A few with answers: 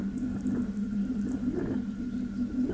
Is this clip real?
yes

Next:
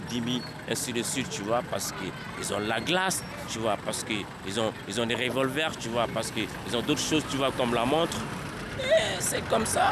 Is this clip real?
yes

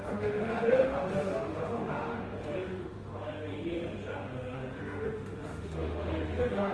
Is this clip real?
no